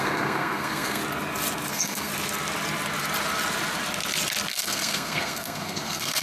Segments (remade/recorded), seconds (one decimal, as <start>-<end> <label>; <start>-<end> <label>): 0.0-1.0 remade; 1.0-1.7 recorded; 1.7-2.1 remade; 2.1-4.5 recorded; 4.5-6.2 remade